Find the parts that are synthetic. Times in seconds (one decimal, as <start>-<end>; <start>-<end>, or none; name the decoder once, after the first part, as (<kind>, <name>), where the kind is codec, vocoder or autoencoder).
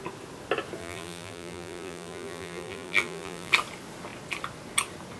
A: 0.8-3.5 (vocoder, BigVGAN v2)